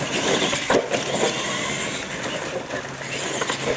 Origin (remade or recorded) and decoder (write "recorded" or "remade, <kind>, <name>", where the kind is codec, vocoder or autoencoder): recorded